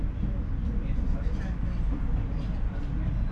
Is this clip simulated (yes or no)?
no